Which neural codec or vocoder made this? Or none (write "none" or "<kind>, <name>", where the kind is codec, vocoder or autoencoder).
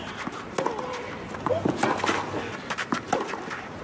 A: none